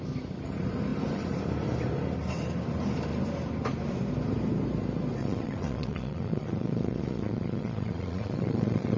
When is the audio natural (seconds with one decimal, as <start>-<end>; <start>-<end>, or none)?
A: 0.0-5.2